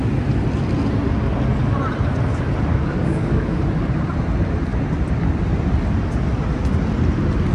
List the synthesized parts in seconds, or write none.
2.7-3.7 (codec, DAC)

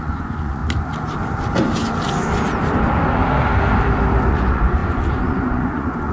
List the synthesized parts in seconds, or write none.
0.0-0.6 (vocoder, Vocos); 4.3-6.1

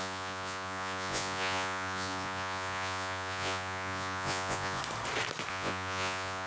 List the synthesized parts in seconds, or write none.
0.0-4.8 (vocoder, Vocos); 5.5-6.5

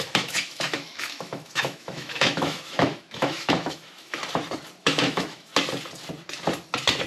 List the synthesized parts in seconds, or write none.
0.0-4.2 (autoencoder, DAC-VAE); 4.8-5.5

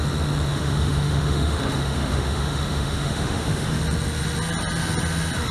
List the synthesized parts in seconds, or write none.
0.5-3.8 (autoencoder, DAC-VAE)

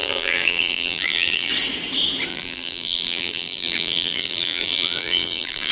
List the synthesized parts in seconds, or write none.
0.0-1.5 (vocoder, BigVGAN v2); 2.3-5.7